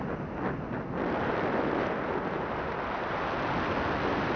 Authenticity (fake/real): real